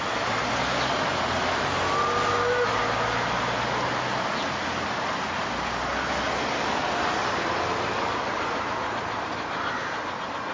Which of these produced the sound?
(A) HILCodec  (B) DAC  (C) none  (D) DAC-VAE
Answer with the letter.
C